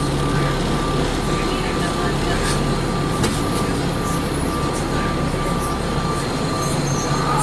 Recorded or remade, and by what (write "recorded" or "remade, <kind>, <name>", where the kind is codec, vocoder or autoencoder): recorded